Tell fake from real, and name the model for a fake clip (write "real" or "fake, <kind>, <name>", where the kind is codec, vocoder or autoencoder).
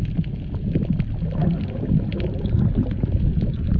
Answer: real